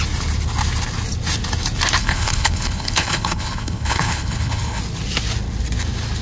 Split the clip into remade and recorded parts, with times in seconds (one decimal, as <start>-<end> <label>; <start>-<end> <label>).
0.0-2.0 recorded; 2.0-4.8 remade; 4.8-6.2 recorded